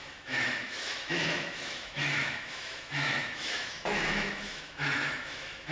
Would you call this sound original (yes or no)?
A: no